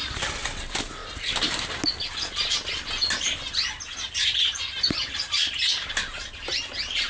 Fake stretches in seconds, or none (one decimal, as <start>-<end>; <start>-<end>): none